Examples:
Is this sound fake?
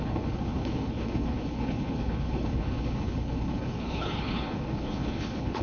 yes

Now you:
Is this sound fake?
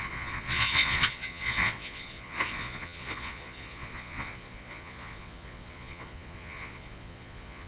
yes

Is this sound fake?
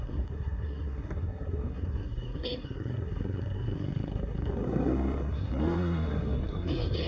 yes